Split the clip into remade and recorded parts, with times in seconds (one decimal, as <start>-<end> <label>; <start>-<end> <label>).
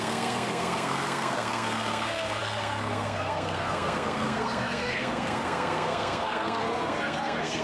0.0-7.6 remade